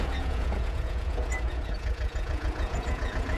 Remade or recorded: remade